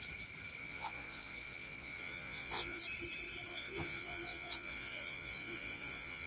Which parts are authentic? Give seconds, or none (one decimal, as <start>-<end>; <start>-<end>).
0.0-0.6; 2.8-3.5